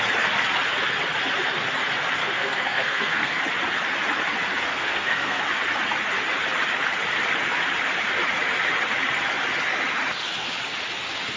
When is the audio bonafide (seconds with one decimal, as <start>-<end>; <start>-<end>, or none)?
0.0-2.2; 3.4-4.7; 5.4-11.4